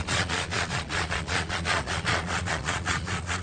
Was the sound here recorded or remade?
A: remade